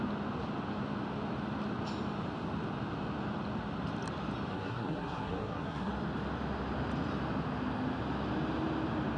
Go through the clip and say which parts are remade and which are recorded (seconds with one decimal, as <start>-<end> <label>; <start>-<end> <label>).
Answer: 0.0-4.5 recorded; 4.5-5.9 remade; 5.9-9.2 recorded